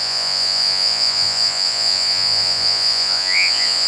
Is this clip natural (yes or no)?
no